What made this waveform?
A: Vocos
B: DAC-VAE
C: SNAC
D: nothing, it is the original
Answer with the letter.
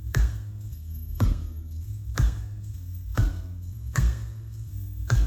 C